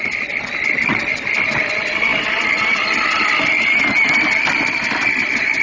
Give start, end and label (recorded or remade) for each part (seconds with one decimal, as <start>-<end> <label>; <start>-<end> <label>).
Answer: 0.0-5.6 recorded